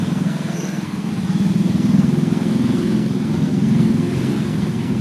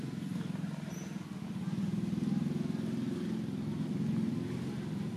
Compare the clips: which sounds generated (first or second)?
first